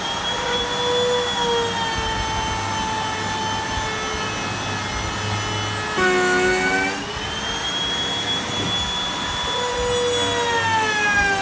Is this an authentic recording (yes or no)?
yes